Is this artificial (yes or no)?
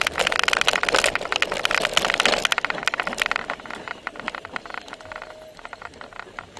no